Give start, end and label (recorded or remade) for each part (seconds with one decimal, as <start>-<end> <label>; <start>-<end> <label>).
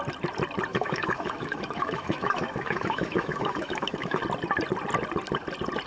0.0-0.7 recorded; 0.7-4.2 remade; 4.2-5.9 recorded